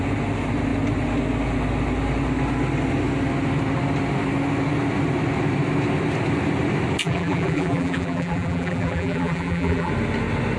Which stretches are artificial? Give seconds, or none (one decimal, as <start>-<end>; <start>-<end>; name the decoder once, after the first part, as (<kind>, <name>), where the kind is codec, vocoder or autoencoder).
7.0-9.9 (vocoder, BigVGAN v2)

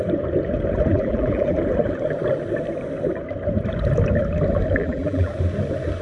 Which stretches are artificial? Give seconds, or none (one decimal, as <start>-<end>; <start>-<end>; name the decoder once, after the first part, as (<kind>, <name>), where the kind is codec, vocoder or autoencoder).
0.9-1.6 (vocoder, BigVGAN v2); 4.8-5.3

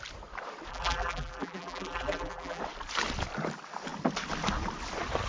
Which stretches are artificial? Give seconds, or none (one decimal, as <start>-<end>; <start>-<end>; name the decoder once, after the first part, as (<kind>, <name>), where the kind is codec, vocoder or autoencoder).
0.7-2.6 (vocoder, BigVGAN v2)

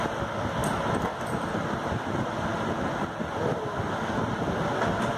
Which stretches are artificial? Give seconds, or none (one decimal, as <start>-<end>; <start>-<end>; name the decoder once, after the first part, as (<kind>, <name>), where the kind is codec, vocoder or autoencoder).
none

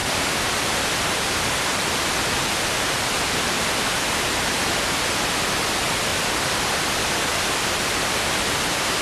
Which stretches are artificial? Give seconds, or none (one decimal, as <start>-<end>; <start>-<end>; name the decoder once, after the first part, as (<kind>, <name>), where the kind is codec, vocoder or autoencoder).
0.0-4.9 (vocoder, BigVGAN v2); 6.1-9.0